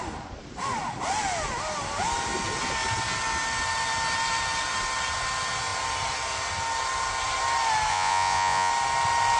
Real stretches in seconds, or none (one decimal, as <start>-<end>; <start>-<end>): 0.0-7.9; 8.7-9.4